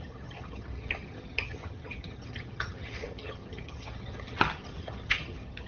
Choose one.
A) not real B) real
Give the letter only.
A